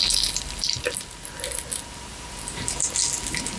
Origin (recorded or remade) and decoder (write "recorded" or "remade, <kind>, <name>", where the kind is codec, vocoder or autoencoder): recorded